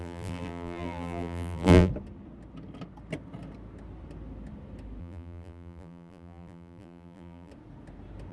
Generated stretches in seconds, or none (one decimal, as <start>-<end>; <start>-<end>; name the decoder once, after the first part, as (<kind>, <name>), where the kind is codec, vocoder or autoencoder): 0.0-1.9 (vocoder, BigVGAN v2); 5.0-7.5